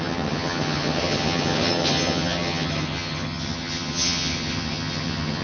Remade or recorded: remade